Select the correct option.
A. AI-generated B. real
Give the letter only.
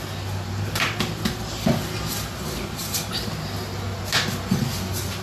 B